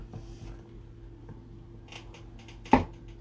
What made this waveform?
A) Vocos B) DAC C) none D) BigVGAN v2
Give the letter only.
C